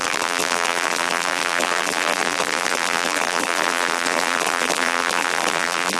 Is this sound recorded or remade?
remade